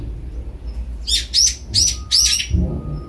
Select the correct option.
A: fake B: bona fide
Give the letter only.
B